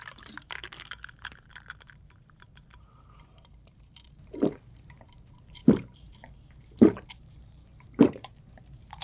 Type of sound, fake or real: fake